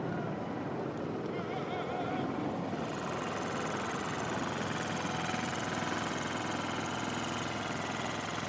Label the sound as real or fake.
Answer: real